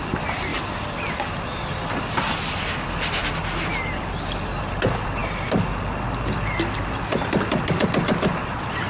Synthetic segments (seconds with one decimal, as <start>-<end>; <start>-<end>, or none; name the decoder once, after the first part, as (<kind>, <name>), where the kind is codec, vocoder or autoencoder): none